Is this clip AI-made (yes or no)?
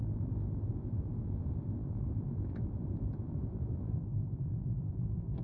yes